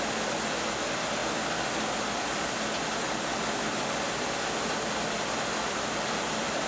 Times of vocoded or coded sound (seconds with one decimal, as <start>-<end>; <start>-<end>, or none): none